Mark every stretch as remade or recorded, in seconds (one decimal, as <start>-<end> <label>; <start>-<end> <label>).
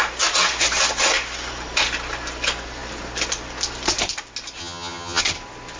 0.0-4.6 recorded; 4.6-5.2 remade; 5.2-5.8 recorded